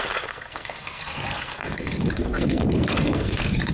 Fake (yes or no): yes